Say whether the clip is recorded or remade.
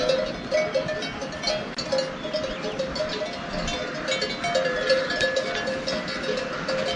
recorded